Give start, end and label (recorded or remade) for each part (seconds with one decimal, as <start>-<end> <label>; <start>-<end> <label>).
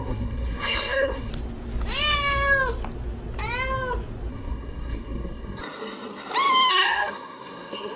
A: 0.0-1.3 remade; 1.3-4.3 recorded; 4.3-5.6 remade; 5.6-6.7 recorded; 6.7-8.0 remade